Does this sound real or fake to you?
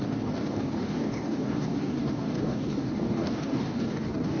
fake